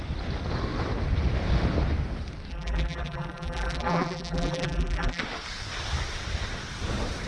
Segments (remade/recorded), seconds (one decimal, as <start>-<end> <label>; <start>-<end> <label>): 0.0-2.5 recorded; 2.5-5.2 remade; 5.2-7.3 recorded